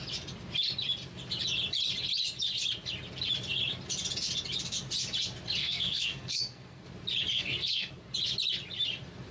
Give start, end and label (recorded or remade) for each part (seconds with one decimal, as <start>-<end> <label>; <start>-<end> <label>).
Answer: 0.0-5.6 recorded; 5.6-6.8 remade; 6.8-7.3 recorded; 7.3-7.9 remade; 7.9-9.3 recorded